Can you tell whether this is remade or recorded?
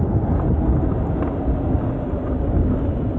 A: recorded